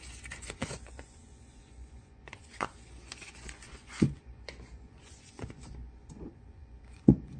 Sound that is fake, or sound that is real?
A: fake